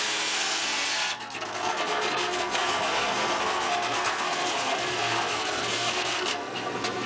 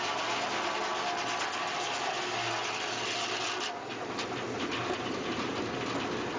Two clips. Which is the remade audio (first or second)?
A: first